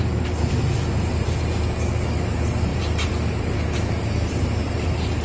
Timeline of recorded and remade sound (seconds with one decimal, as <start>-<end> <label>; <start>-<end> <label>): 0.0-5.2 recorded

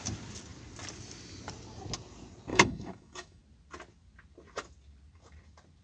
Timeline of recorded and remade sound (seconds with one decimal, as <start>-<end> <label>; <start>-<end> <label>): 0.0-2.5 recorded; 2.5-3.4 remade; 3.4-5.8 recorded

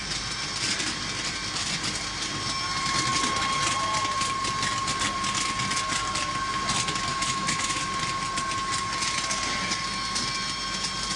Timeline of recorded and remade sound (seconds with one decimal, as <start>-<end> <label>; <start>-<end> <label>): 0.0-7.1 recorded; 7.1-7.8 remade; 7.8-11.2 recorded

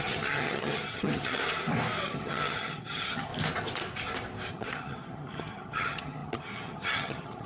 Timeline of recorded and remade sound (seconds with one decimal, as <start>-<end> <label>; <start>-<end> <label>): 0.0-1.4 remade; 1.4-2.0 recorded; 2.0-3.3 remade; 3.3-4.5 recorded; 4.5-7.5 remade

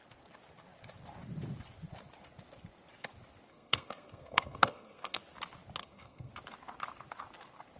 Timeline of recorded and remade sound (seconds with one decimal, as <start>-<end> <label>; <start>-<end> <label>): 0.0-3.5 recorded; 3.5-5.2 remade; 5.2-5.8 recorded; 5.8-6.3 remade; 6.3-7.8 recorded